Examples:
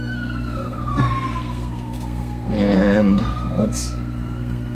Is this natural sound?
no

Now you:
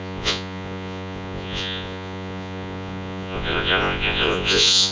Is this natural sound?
no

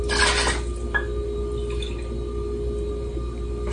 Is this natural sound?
yes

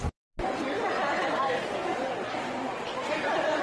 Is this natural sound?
yes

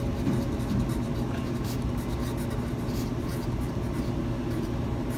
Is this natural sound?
yes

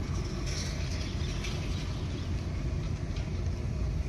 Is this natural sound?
yes